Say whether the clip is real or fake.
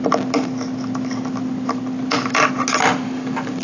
real